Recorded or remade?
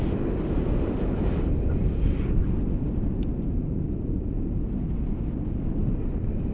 recorded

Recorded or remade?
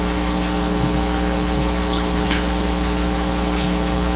remade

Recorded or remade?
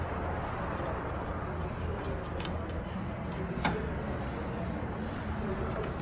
recorded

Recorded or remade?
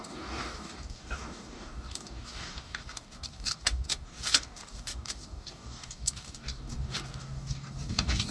remade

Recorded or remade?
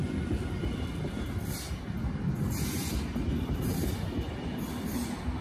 recorded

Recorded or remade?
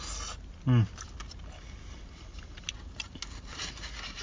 recorded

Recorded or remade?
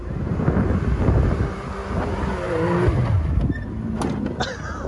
recorded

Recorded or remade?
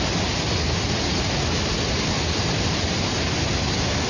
recorded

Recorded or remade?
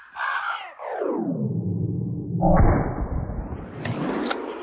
recorded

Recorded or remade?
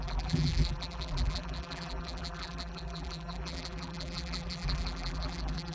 remade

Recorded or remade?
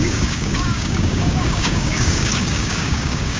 remade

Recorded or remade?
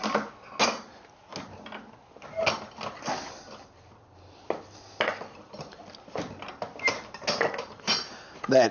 recorded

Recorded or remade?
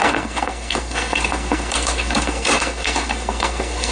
remade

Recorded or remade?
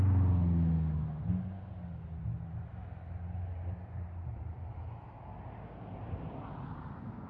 recorded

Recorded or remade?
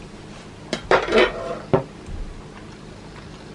recorded